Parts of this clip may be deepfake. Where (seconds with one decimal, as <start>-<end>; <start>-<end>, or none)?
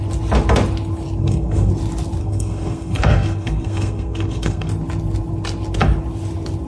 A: 1.2-1.7; 2.2-4.7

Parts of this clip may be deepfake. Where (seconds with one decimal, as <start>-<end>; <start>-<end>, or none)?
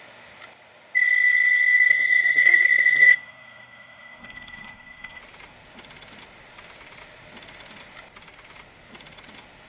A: 1.9-5.2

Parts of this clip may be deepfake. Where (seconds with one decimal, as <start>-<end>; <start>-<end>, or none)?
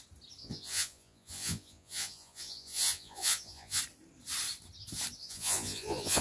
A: 0.4-3.8; 5.2-6.2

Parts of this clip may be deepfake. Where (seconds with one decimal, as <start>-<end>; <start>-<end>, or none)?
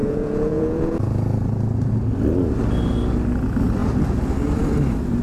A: 0.0-1.0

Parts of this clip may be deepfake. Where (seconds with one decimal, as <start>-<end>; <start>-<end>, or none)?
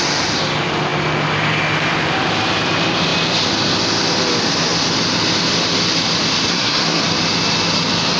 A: 6.5-7.0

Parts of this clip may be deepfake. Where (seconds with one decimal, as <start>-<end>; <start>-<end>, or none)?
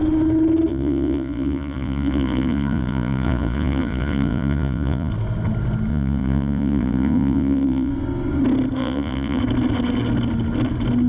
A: 0.7-5.1; 5.9-7.9; 8.8-9.4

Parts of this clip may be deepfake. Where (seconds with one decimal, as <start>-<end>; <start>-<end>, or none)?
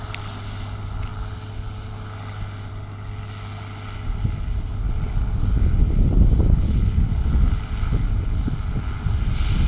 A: none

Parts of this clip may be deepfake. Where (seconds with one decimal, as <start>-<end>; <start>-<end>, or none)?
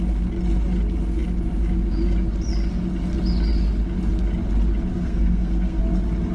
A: 4.9-5.8